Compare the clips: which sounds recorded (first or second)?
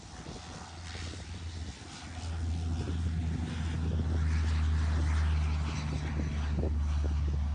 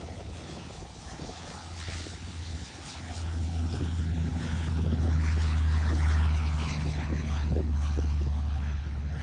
first